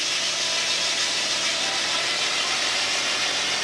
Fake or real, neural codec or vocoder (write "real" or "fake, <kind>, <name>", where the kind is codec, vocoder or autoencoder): real